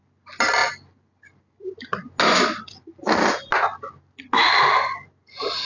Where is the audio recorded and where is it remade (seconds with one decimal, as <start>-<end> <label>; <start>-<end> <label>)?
0.0-5.7 recorded